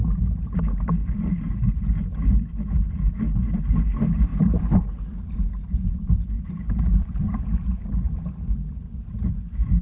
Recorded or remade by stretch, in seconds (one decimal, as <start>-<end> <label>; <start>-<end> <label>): 0.0-1.0 recorded; 1.0-3.1 remade; 3.1-4.3 recorded; 4.3-8.3 remade; 8.3-9.8 recorded

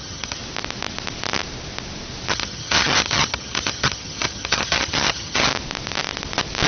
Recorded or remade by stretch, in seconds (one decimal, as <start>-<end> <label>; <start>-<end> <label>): 0.0-0.4 remade; 0.4-2.3 recorded; 2.3-5.5 remade; 5.5-6.7 recorded